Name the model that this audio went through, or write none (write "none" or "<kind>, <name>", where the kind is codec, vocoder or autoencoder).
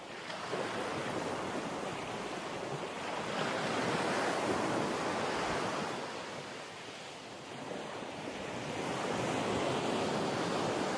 none